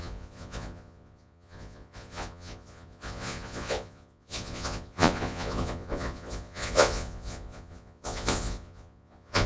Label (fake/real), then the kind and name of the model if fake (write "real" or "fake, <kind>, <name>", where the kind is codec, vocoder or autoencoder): fake, vocoder, Vocos